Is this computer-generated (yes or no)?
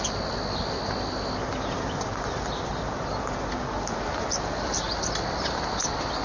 no